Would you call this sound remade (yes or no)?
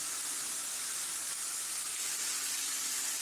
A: no